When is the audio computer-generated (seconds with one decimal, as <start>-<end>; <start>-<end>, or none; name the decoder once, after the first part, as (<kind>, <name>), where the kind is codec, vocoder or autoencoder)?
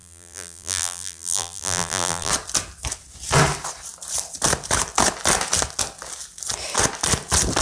0.0-2.3 (vocoder, BigVGAN v2)